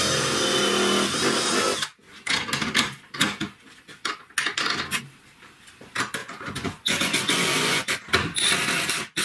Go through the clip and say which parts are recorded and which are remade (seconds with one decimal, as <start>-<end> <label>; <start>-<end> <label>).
0.0-6.2 recorded; 6.2-8.1 remade; 8.1-9.2 recorded